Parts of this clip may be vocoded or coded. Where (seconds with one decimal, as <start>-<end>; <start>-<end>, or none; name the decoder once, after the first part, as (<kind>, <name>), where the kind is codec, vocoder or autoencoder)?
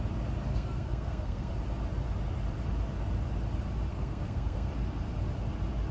0.5-1.5 (codec, SNAC); 3.9-4.7